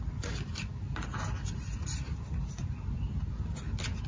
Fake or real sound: real